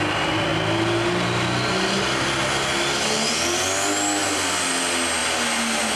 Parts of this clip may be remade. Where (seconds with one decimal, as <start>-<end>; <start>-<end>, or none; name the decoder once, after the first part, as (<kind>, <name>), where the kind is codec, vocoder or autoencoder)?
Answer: none